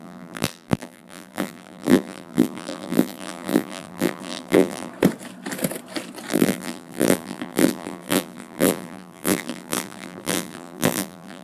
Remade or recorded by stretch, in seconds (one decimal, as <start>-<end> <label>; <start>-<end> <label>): 0.0-4.9 remade; 4.9-6.3 recorded; 6.3-11.4 remade